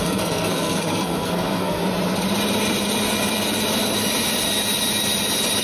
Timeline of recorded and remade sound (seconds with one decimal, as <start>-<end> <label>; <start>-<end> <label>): 0.0-1.8 remade; 1.8-5.6 recorded